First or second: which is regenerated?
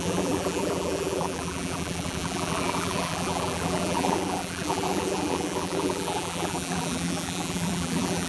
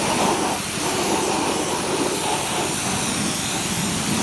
first